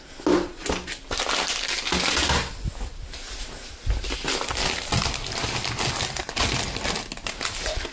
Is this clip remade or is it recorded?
recorded